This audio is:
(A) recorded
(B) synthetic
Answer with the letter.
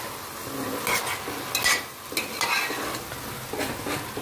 A